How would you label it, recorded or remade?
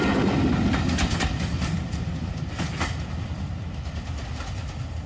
recorded